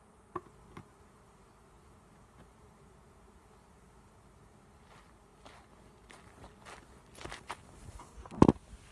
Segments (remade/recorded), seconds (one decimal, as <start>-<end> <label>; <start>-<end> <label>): 0.0-8.9 recorded